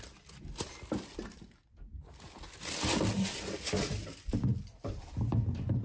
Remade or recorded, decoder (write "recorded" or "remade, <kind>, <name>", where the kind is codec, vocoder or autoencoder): recorded